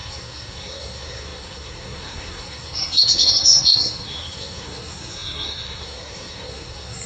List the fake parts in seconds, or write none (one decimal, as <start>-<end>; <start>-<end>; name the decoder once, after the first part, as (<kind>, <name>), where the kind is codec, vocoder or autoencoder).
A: 0.0-7.1 (codec, SNAC)